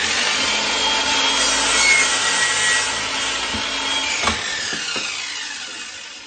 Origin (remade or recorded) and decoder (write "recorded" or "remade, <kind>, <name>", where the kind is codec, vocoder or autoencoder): recorded